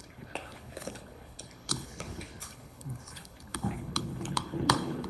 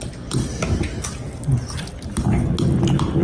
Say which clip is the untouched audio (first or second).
second